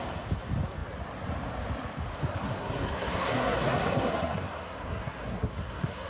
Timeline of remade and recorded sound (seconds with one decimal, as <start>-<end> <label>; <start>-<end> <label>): 0.0-2.3 recorded; 2.3-6.1 remade